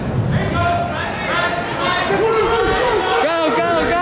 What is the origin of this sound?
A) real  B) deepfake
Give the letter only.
A